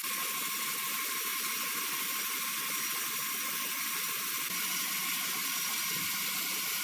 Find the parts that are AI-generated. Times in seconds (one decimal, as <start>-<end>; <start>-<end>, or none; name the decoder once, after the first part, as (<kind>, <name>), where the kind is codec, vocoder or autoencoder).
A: none